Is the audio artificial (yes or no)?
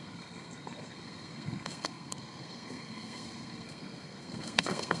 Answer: yes